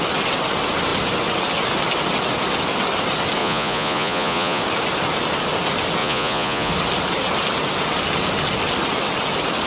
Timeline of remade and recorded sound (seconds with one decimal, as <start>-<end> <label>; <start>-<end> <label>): 0.0-3.4 recorded; 3.4-4.6 remade; 4.6-6.0 recorded; 6.0-6.7 remade; 6.7-9.7 recorded